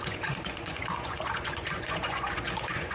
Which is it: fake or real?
fake